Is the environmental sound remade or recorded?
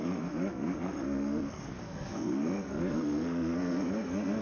remade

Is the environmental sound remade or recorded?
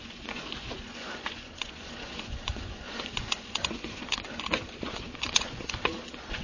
remade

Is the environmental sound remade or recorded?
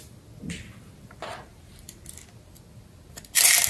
recorded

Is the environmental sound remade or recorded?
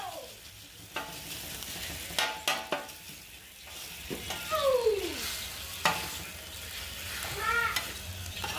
recorded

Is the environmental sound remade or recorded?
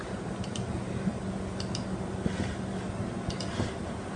recorded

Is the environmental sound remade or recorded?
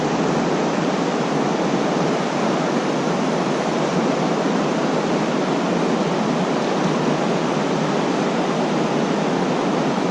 recorded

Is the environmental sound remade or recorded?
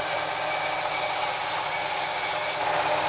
recorded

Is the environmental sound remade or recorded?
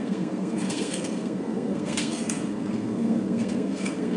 remade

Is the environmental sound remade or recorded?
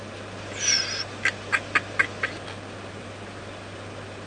recorded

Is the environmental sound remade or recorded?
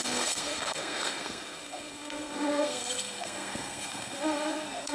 remade